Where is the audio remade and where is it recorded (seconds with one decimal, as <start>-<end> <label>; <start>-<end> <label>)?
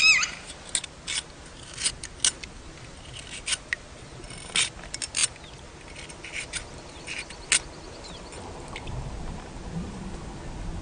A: 0.0-10.8 recorded